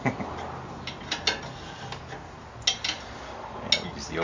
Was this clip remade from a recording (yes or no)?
no